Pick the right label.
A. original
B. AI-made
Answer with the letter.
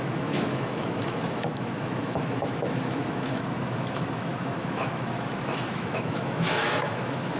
B